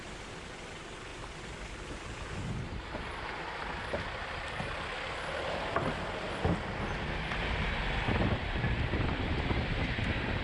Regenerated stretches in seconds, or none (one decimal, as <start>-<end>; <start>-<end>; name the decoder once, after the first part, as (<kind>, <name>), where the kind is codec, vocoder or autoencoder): none